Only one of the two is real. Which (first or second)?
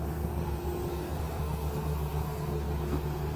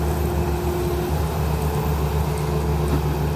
second